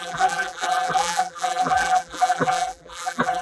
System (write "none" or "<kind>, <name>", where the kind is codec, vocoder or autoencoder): vocoder, BigVGAN v2